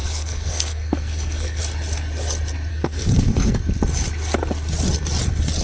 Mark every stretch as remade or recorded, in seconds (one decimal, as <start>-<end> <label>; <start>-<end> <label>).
0.0-1.6 remade; 1.6-2.7 recorded; 2.7-3.6 remade; 3.6-5.6 recorded